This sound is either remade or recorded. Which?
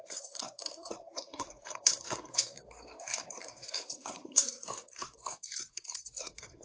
remade